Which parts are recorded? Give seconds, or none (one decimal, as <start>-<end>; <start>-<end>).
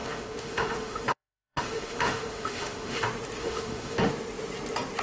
3.0-3.4; 4.1-5.0